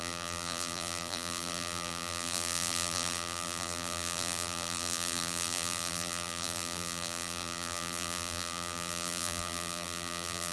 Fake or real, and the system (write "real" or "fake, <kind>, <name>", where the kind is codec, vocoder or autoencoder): fake, vocoder, BigVGAN v2